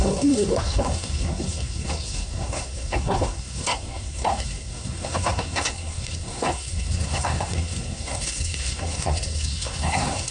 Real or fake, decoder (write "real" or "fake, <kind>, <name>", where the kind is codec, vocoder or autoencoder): fake, codec, SNAC